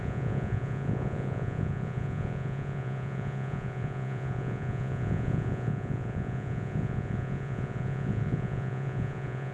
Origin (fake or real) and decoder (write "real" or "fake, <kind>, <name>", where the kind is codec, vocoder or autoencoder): fake, vocoder, Vocos